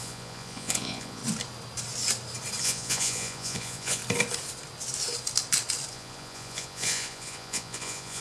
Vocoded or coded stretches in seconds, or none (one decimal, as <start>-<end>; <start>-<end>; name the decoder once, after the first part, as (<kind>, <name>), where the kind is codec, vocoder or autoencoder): 0.0-1.2 (vocoder, Vocos); 2.6-4.0; 5.9-8.2